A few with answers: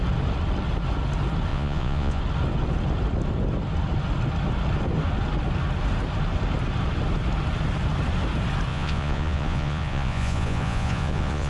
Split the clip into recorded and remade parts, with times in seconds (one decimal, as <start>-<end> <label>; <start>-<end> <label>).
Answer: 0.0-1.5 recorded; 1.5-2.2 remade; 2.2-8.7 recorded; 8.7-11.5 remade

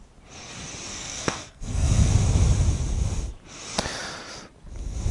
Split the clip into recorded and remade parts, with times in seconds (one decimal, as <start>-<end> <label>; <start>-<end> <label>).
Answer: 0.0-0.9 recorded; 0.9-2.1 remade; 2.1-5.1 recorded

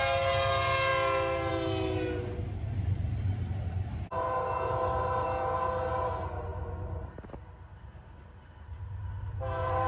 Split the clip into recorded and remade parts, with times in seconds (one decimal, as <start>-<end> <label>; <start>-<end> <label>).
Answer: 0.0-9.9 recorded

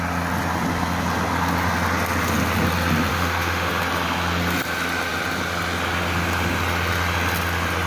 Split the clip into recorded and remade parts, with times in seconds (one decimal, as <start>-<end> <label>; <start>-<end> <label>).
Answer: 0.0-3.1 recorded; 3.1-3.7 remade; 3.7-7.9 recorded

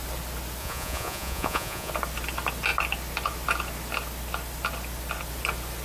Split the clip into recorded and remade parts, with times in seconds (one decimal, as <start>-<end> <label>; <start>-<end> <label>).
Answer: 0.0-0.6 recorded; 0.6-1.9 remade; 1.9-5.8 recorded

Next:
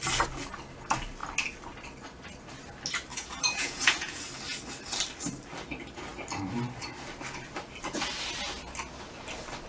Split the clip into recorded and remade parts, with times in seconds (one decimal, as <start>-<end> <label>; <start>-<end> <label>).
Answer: 0.0-3.1 recorded; 3.1-4.2 remade; 4.2-9.7 recorded

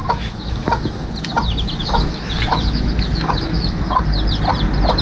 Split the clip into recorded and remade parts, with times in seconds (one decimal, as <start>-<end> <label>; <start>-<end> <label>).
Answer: 0.0-1.1 remade; 1.1-1.8 recorded; 1.8-4.0 remade; 4.0-5.0 recorded

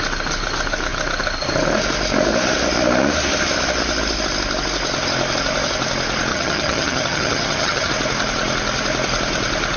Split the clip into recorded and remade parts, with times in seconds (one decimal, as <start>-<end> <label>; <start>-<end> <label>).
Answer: 0.0-6.3 recorded; 6.3-7.9 remade; 7.9-9.8 recorded